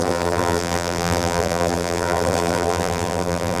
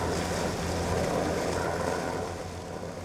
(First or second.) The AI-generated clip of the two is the first